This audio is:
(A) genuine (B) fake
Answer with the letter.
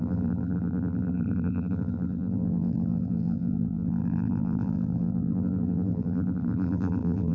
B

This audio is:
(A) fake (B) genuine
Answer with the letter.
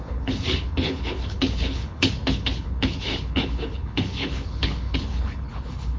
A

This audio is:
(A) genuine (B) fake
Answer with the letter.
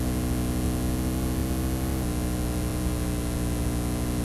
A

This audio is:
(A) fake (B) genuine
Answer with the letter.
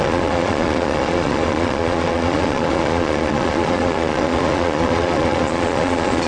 A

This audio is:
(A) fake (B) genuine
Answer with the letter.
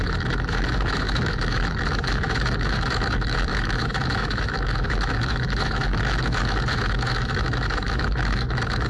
A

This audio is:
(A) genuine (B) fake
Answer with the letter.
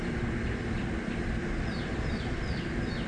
A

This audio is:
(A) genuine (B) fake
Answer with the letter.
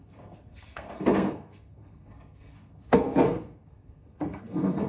B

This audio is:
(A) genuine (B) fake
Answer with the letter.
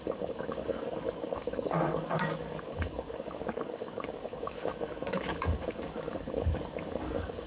B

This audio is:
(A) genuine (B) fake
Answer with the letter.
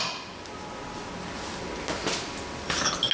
A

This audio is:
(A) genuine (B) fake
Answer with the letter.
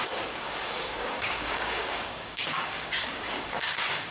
B